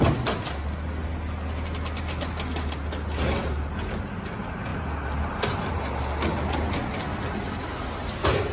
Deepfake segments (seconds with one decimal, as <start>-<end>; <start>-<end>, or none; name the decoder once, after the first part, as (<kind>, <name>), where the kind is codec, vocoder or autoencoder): none

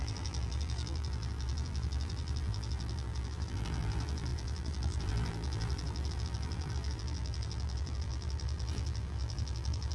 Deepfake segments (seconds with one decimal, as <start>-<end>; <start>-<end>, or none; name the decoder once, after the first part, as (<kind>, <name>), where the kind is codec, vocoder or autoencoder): 0.0-9.9 (vocoder, BigVGAN v2)

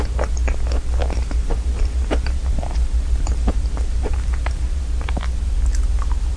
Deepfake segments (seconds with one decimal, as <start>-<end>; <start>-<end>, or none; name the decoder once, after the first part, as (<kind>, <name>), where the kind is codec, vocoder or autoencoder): 1.0-4.8 (vocoder, BigVGAN v2)

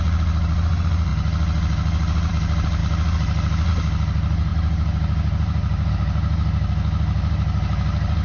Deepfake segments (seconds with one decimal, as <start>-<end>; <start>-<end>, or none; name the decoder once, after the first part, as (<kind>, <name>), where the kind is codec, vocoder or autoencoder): 4.5-5.9 (vocoder, BigVGAN v2)

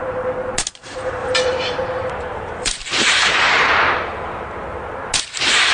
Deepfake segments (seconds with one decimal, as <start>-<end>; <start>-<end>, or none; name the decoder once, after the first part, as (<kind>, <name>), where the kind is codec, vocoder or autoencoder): 1.2-4.4 (vocoder, BigVGAN v2)

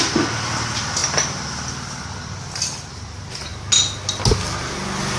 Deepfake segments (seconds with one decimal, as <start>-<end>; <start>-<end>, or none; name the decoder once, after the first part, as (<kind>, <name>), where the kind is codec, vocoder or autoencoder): none

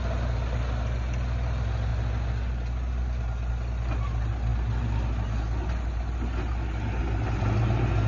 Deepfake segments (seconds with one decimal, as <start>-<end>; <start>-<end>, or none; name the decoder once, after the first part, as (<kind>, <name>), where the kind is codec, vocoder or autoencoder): none

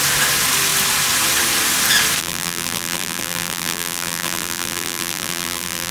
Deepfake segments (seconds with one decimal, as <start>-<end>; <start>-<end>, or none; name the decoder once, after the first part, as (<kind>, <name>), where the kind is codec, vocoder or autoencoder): 2.2-5.9 (vocoder, BigVGAN v2)